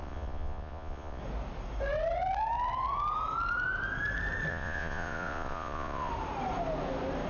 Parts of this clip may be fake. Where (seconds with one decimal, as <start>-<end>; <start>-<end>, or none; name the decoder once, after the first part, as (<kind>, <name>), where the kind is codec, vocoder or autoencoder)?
0.0-1.2 (vocoder, Vocos); 4.5-6.1